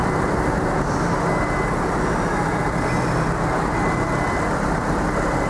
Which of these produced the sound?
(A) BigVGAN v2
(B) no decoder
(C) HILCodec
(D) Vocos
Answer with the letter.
B